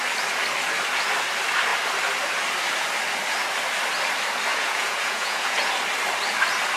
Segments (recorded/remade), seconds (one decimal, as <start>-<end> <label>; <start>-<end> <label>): 0.0-4.5 recorded; 4.5-5.7 remade; 5.7-6.8 recorded